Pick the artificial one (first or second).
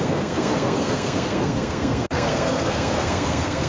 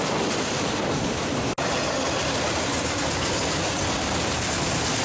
first